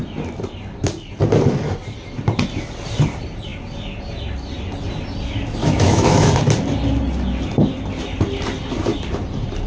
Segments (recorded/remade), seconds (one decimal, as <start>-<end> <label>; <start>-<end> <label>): 0.0-5.6 recorded; 5.6-6.3 remade; 6.3-9.7 recorded